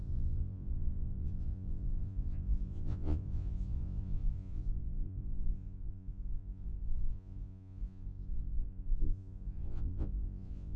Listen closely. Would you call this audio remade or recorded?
remade